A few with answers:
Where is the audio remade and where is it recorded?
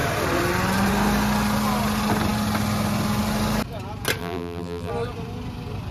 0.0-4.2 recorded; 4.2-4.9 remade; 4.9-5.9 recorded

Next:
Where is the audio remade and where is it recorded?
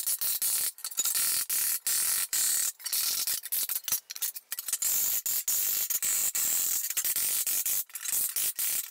0.0-1.9 recorded; 1.9-2.7 remade; 2.7-6.2 recorded; 6.2-7.7 remade; 7.7-8.9 recorded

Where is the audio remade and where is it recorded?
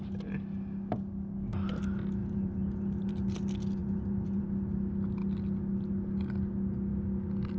0.0-2.2 recorded; 2.2-3.1 remade; 3.1-3.8 recorded; 3.8-4.4 remade; 4.4-7.6 recorded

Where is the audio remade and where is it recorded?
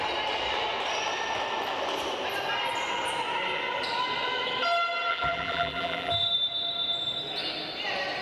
0.0-5.1 recorded; 5.1-6.1 remade; 6.1-8.2 recorded